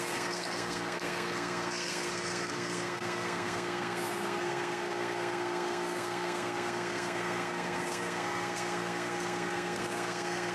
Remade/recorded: remade